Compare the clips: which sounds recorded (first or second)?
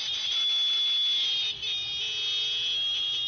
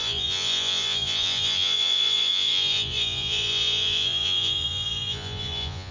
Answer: first